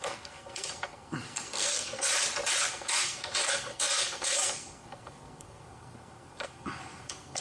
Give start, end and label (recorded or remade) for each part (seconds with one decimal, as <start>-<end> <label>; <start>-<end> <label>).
0.0-2.1 remade; 2.1-2.7 recorded; 2.7-7.4 remade